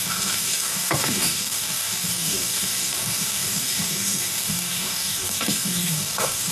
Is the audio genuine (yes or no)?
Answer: no